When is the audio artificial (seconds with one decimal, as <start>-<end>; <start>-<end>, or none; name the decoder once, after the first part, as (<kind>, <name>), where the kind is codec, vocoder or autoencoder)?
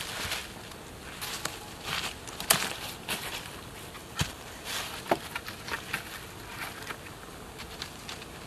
4.0-4.8 (vocoder, BigVGAN v2)